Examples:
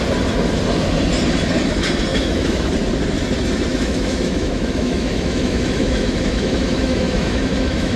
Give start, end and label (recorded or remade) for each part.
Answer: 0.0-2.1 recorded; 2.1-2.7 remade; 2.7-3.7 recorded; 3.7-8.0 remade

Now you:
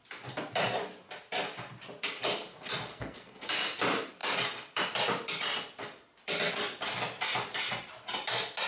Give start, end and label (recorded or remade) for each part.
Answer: 0.0-2.9 recorded; 2.9-3.4 remade; 3.4-8.7 recorded

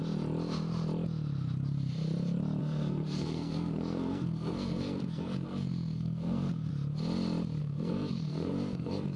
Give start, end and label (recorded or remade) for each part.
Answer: 0.0-2.6 recorded; 2.6-6.7 remade; 6.7-7.6 recorded; 7.6-9.2 remade

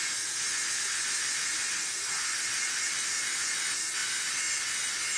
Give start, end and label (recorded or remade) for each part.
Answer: 0.0-5.2 recorded

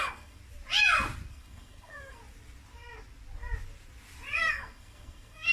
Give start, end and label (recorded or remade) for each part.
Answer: 0.0-0.4 remade; 0.4-1.3 recorded; 1.3-2.2 remade; 2.2-4.4 recorded; 4.4-5.5 remade

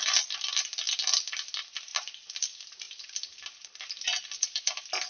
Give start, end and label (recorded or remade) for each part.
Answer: 0.0-5.1 recorded